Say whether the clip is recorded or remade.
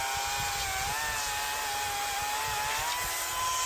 recorded